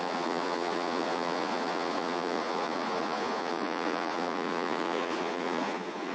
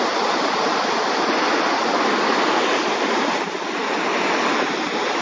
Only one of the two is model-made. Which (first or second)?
first